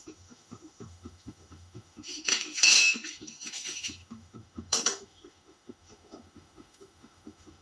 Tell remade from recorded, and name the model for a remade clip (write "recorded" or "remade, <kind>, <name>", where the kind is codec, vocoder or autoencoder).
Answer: remade, autoencoder, DAC-VAE